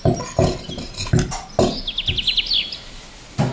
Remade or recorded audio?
recorded